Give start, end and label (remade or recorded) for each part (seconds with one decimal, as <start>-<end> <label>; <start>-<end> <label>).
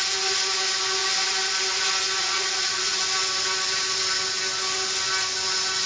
0.0-2.2 recorded; 2.2-3.0 remade; 3.0-5.9 recorded